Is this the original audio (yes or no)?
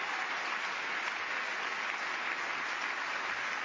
yes